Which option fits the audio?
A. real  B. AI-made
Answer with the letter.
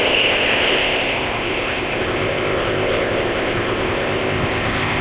B